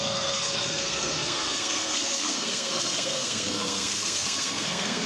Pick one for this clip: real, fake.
fake